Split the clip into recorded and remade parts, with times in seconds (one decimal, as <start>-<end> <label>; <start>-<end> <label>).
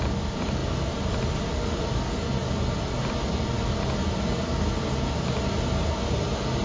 0.0-6.6 recorded